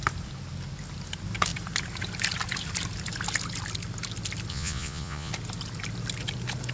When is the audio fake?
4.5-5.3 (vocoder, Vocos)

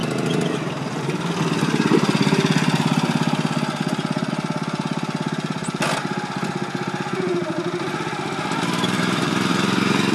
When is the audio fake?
none

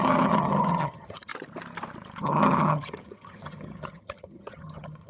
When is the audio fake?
0.0-1.3 (vocoder, HiFi-GAN); 2.2-5.1

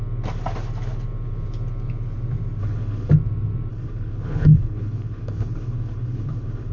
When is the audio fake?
2.6-3.1 (codec, HILCodec); 3.7-6.7

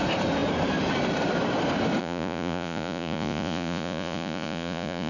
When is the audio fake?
2.0-5.1 (vocoder, Vocos)

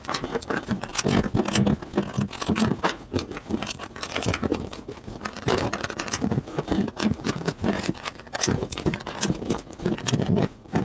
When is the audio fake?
0.0-0.9 (vocoder, Vocos); 2.5-10.8